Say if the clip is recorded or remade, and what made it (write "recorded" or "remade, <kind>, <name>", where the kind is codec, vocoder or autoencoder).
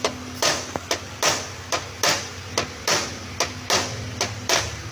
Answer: recorded